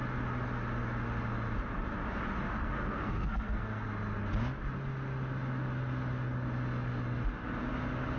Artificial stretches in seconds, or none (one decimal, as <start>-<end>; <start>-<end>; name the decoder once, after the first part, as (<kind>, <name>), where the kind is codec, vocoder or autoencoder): 2.5-3.9 (codec, SNAC)